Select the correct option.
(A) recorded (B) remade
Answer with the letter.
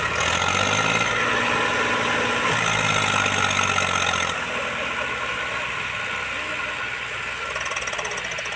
A